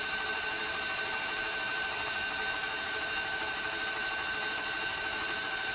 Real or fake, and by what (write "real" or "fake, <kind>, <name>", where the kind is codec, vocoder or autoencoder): real